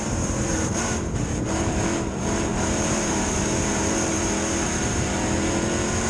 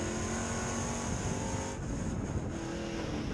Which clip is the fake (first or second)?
first